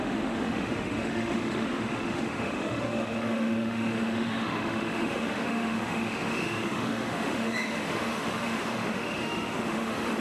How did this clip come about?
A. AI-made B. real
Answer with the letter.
A